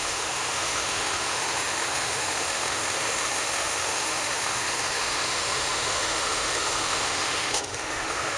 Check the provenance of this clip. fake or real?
fake